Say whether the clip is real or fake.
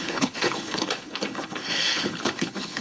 fake